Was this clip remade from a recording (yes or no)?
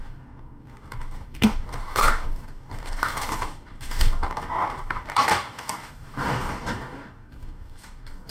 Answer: yes